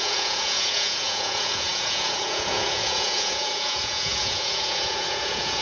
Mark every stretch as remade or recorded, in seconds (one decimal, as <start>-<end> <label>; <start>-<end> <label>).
0.0-5.6 remade